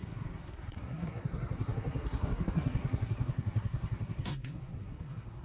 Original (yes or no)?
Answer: no